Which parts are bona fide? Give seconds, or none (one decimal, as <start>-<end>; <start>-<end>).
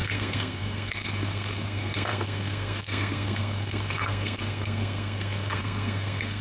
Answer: none